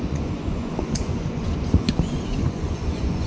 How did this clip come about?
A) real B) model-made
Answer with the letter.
B